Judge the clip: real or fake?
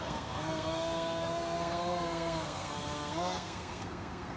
fake